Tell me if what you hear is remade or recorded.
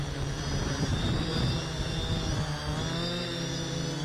recorded